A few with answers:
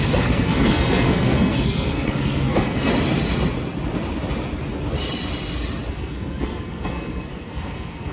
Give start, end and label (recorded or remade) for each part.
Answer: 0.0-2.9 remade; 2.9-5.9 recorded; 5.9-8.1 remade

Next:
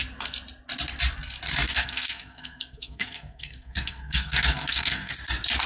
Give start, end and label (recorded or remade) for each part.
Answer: 0.0-1.7 recorded; 1.7-5.1 remade; 5.1-5.7 recorded

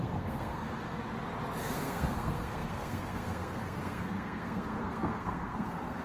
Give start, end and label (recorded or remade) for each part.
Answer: 0.0-1.0 remade; 1.0-1.6 recorded; 1.6-6.0 remade

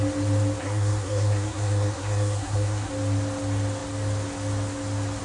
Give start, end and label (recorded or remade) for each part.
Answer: 0.0-0.6 recorded; 0.6-2.9 remade; 2.9-5.2 recorded

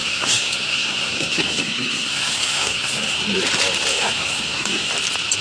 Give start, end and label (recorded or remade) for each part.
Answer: 0.0-3.2 remade; 3.2-3.9 recorded; 3.9-4.9 remade; 4.9-5.4 recorded

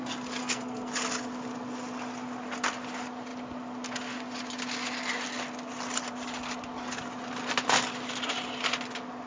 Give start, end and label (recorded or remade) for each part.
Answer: 0.0-0.4 recorded; 0.4-0.9 remade; 0.9-9.3 recorded